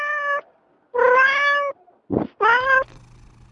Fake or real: real